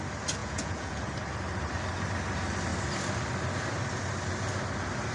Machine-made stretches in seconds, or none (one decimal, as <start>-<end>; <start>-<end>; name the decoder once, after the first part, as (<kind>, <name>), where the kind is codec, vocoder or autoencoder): 0.4-1.0 (vocoder, Vocos)